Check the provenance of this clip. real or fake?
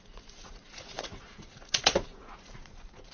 fake